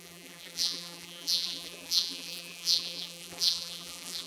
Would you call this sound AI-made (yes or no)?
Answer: yes